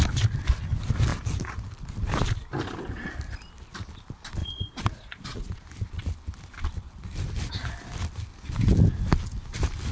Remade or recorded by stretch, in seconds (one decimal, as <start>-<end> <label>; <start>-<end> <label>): 0.0-4.4 recorded; 4.4-5.6 remade; 5.6-9.9 recorded